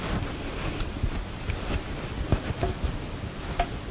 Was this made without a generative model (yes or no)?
yes